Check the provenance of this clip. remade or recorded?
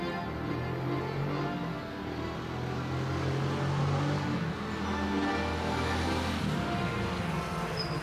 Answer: recorded